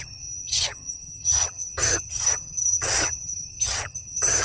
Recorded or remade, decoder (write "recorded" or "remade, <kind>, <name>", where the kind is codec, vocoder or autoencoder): remade, vocoder, HiFi-GAN